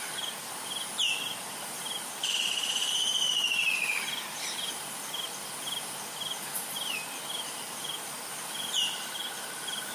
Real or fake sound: fake